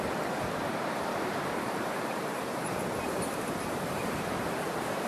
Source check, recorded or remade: remade